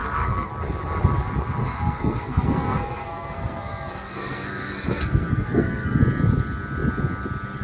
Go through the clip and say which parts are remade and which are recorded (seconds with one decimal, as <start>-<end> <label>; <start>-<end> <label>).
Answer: 0.0-0.5 remade; 0.5-1.6 recorded; 1.6-6.0 remade; 6.0-7.6 recorded